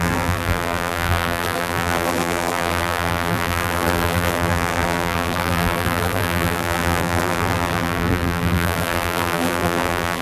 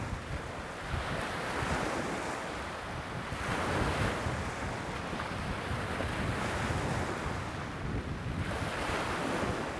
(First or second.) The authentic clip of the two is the second